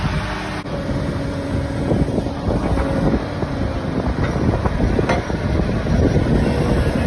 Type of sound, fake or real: real